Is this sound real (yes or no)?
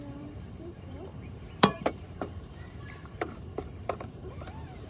no